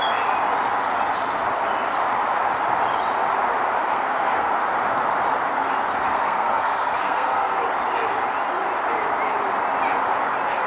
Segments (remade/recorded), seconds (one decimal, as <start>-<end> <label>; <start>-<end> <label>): 0.0-3.9 recorded; 3.9-4.5 remade; 4.5-6.1 recorded; 6.1-7.6 remade; 7.6-10.7 recorded